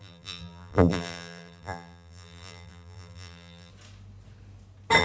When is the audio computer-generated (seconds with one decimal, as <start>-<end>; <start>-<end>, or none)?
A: 0.0-3.7